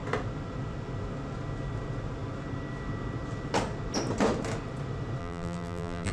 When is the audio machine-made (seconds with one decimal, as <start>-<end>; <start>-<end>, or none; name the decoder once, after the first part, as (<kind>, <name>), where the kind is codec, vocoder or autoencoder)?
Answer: 5.2-6.1 (vocoder, BigVGAN v2)